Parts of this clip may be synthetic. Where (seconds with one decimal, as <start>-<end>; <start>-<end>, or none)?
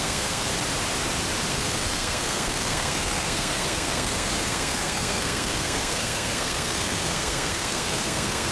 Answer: 0.0-0.5; 1.5-8.5